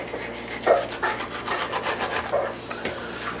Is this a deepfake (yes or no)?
no